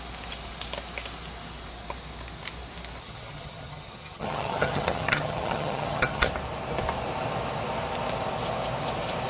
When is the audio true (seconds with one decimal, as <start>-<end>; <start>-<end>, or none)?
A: 0.0-3.0; 6.3-9.3